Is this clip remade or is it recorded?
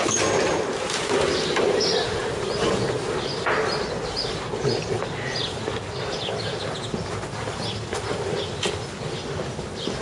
recorded